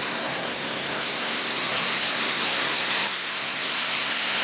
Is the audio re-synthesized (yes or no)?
yes